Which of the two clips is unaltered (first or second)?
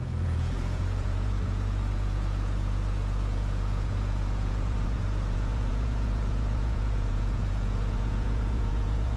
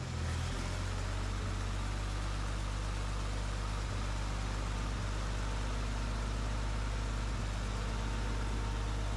second